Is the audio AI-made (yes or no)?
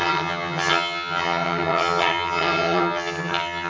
yes